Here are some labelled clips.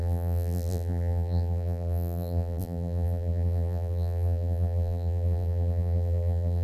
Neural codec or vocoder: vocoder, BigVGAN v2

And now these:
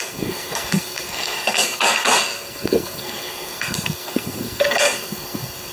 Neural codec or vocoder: codec, SNAC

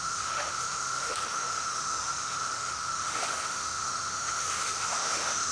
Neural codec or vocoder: autoencoder, DAC-VAE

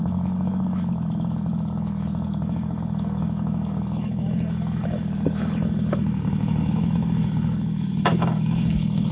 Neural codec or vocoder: autoencoder, DAC-VAE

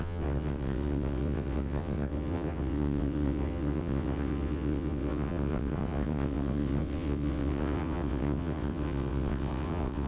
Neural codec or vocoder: vocoder, WaveNeXt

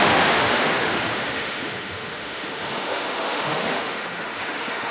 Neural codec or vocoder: autoencoder, DAC-VAE